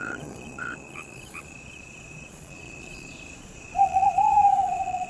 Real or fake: fake